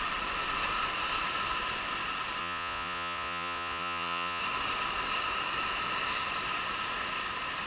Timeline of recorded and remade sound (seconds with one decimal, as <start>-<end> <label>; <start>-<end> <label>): 0.0-2.4 recorded; 2.4-4.4 remade; 4.4-7.7 recorded